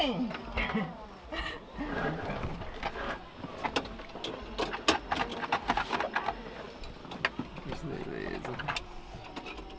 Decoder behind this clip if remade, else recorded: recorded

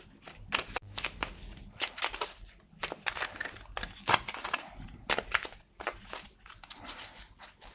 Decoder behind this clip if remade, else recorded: recorded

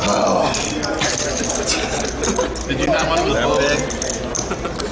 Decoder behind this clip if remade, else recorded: recorded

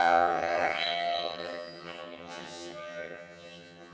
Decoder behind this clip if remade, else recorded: remade, vocoder, HiFi-GAN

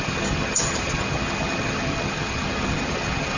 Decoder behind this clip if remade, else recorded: remade, vocoder, HiFi-GAN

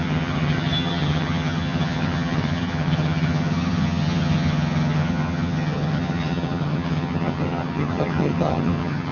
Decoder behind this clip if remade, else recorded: remade, vocoder, HiFi-GAN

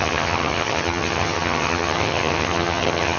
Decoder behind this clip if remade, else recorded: remade, vocoder, HiFi-GAN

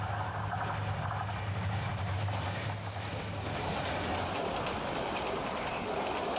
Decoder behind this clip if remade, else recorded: recorded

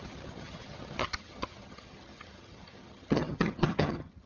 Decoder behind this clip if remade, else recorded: remade, vocoder, HiFi-GAN